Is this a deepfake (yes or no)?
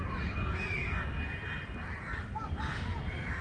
no